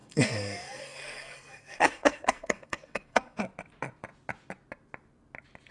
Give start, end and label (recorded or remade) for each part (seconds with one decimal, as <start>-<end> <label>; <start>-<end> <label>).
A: 0.0-3.4 remade; 3.4-5.7 recorded